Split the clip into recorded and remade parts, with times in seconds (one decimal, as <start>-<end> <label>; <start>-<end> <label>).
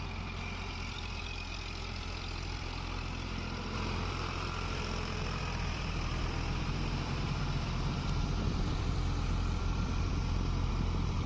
0.0-10.1 remade; 10.1-10.7 recorded; 10.7-11.3 remade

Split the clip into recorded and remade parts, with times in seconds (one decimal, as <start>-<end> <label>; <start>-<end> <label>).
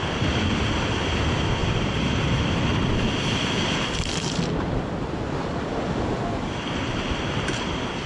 0.0-8.1 recorded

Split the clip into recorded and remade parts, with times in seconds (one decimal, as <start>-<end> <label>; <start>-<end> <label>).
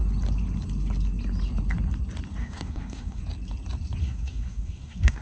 0.0-2.4 recorded; 2.4-3.2 remade; 3.2-4.0 recorded; 4.0-5.2 remade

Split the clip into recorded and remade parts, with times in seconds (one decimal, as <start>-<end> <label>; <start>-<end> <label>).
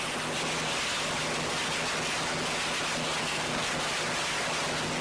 0.0-3.2 recorded; 3.2-3.7 remade; 3.7-5.0 recorded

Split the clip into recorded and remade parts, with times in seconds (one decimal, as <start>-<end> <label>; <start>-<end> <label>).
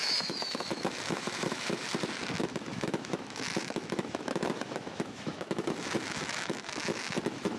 0.0-1.9 remade; 1.9-2.4 recorded; 2.4-7.6 remade